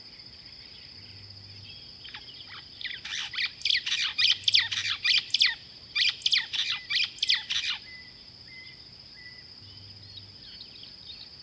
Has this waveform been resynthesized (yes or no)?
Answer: no